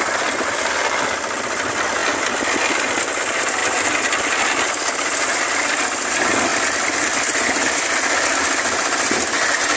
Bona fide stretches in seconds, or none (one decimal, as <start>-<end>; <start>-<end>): 2.0-2.6; 6.5-9.8